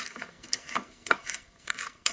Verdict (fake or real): fake